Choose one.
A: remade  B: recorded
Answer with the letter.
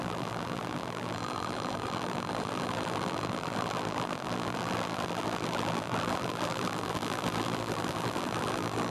A